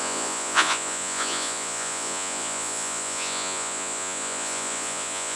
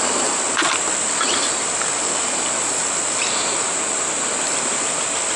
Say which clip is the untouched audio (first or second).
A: second